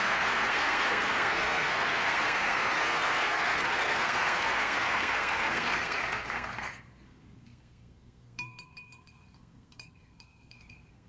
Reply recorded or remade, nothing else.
remade